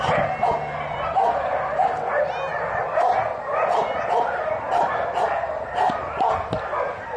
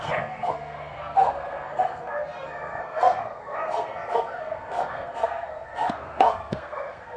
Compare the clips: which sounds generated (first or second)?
second